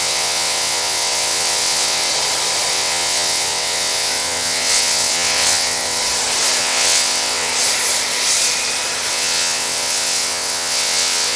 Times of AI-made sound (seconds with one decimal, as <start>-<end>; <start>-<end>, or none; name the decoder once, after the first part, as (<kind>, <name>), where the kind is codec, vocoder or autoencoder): 0.0-2.1 (vocoder, WaveNeXt); 2.7-6.0; 6.6-7.5; 9.1-11.4